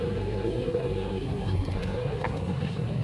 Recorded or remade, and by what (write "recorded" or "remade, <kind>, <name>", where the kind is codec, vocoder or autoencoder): remade, codec, SNAC